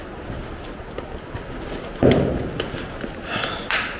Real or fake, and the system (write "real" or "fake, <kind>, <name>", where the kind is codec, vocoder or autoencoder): real